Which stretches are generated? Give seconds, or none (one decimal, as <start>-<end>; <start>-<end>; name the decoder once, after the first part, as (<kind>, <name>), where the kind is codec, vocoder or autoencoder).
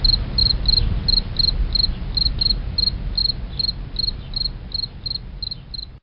none